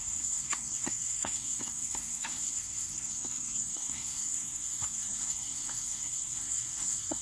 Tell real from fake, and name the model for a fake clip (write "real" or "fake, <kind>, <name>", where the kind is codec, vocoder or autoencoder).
fake, codec, SNAC